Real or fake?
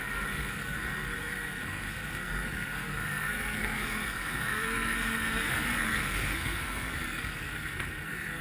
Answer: fake